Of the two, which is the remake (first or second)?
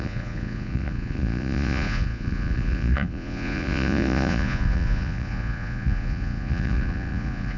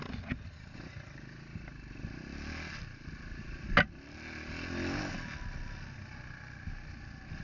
first